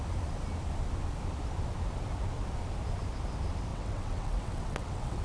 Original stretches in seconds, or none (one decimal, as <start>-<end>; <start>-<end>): 0.0-3.7